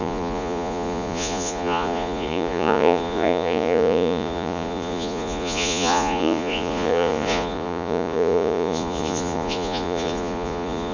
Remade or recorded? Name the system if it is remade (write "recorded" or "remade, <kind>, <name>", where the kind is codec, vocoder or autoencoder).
remade, vocoder, Vocos